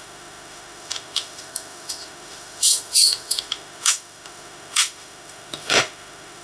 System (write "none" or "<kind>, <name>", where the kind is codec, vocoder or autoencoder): autoencoder, DAC-VAE